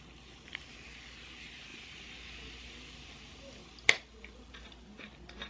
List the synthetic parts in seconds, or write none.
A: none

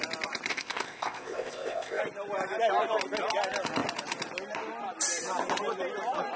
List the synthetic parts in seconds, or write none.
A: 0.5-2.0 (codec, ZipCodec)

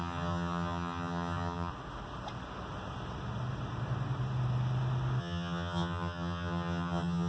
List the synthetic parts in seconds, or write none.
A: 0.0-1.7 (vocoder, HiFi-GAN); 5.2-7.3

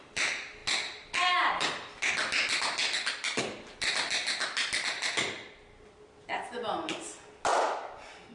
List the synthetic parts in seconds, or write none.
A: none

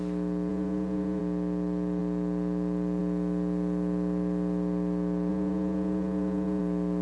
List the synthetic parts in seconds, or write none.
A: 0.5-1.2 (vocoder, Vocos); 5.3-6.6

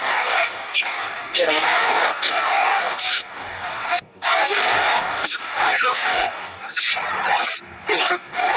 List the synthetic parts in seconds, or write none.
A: 0.0-6.9 (codec, DAC); 8.0-8.6

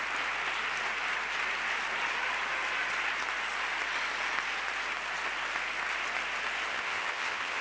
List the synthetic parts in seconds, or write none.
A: 6.7-7.6 (vocoder, HiFi-GAN)